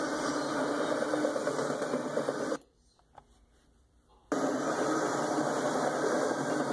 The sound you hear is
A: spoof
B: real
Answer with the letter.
B